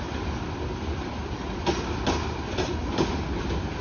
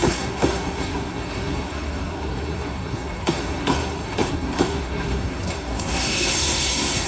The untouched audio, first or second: first